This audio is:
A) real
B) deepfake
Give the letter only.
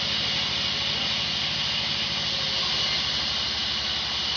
A